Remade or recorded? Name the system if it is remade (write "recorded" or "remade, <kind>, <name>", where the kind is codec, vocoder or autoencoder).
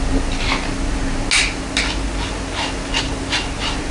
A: recorded